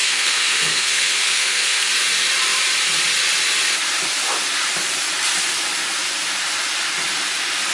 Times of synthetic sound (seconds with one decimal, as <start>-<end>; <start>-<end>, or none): 0.0-1.9